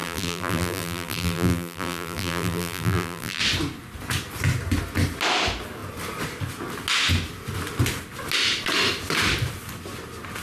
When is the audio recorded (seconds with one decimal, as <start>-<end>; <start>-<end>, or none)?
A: 3.4-10.4